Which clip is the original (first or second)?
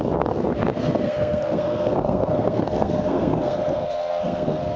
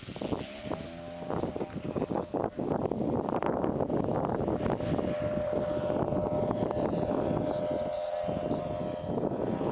second